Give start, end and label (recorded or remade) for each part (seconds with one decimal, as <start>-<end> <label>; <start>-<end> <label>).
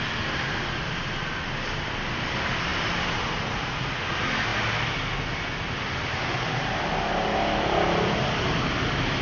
0.0-9.2 recorded